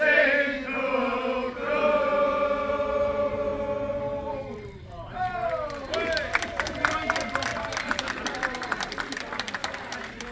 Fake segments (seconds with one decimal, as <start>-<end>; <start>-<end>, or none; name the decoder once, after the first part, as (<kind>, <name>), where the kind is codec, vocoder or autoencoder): none